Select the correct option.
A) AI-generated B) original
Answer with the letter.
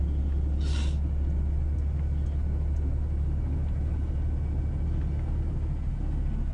B